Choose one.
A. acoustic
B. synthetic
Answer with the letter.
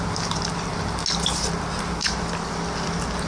A